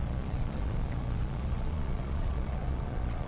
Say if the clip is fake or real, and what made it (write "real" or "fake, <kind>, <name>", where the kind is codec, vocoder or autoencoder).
fake, vocoder, Vocos